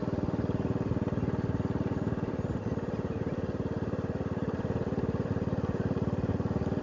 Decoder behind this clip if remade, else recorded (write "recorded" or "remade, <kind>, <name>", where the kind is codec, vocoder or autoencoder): recorded